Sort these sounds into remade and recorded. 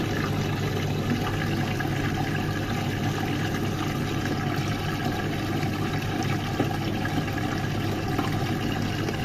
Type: recorded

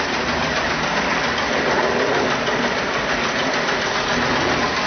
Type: recorded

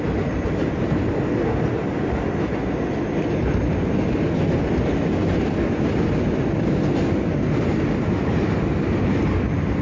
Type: recorded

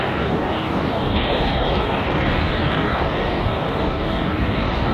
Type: remade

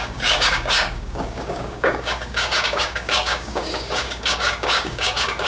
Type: remade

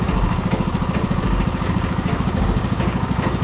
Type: remade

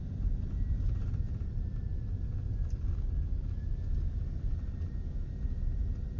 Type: recorded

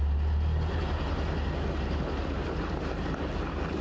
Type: recorded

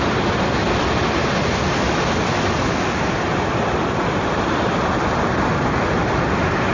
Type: recorded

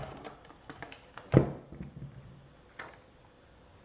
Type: recorded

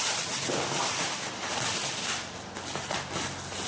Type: recorded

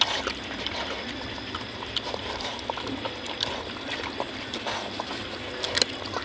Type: recorded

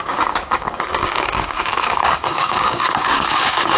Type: remade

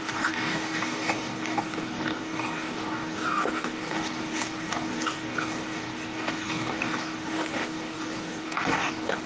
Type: remade